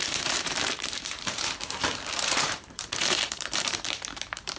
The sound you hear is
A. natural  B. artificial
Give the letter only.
B